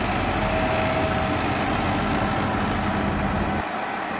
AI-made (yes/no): no